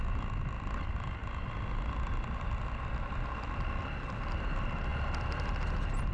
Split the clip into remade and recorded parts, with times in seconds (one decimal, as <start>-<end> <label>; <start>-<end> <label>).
0.0-6.1 recorded